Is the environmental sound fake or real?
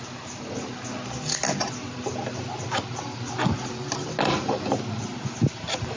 real